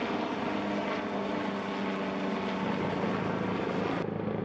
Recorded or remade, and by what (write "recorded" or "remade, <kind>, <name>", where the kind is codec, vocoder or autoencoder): recorded